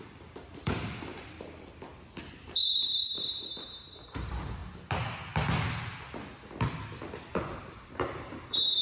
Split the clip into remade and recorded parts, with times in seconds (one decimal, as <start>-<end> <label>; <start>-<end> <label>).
0.0-1.9 remade; 1.9-2.6 recorded; 2.6-4.6 remade; 4.6-7.6 recorded; 7.6-8.8 remade